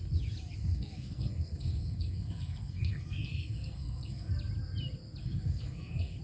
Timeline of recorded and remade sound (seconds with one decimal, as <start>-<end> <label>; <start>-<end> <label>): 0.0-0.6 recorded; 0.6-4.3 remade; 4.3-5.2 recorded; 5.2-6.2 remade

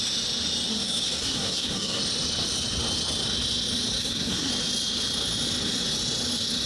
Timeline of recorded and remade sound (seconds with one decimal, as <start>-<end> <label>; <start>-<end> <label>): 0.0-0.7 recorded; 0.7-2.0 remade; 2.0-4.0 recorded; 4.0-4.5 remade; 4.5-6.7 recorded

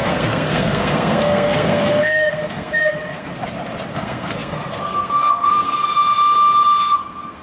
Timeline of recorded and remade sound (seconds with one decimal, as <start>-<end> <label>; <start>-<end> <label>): 0.0-3.3 remade; 3.3-3.9 recorded; 3.9-5.9 remade; 5.9-6.8 recorded; 6.8-7.4 remade